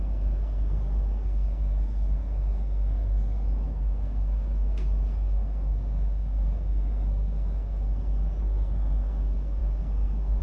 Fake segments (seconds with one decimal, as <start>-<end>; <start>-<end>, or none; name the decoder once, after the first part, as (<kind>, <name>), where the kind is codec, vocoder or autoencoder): 0.0-10.4 (codec, SNAC)